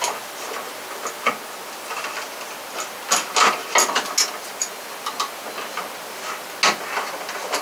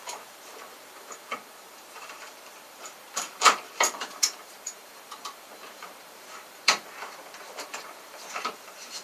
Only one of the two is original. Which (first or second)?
first